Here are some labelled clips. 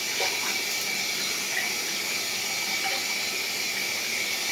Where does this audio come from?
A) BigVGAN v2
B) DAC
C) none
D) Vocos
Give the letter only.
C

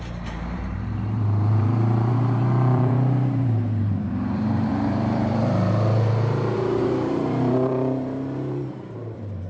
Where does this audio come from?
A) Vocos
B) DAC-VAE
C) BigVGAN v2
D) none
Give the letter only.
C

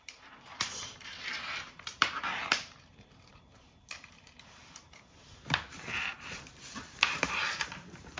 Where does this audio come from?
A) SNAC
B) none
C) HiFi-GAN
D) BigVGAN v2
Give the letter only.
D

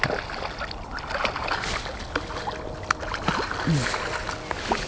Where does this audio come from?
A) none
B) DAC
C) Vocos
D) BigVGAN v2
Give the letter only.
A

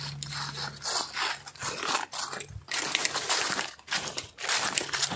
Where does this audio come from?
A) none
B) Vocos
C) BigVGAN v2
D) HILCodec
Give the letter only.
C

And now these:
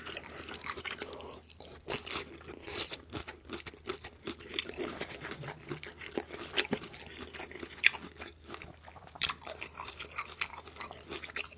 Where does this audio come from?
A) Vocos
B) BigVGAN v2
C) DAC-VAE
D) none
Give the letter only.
B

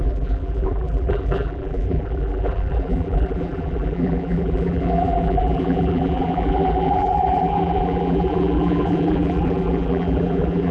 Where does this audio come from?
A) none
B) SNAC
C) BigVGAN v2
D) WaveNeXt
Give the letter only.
C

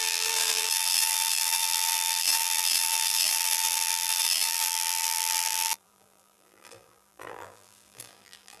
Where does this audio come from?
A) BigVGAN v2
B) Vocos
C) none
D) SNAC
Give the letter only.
A